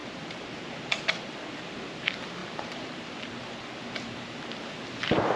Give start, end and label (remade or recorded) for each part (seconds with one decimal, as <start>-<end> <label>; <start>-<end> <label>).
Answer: 0.0-1.5 remade; 1.5-2.4 recorded; 2.4-3.3 remade; 3.3-5.4 recorded